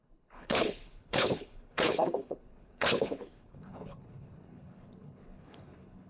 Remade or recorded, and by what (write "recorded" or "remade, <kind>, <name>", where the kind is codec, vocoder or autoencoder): remade, codec, HILCodec